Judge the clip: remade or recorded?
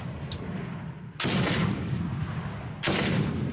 recorded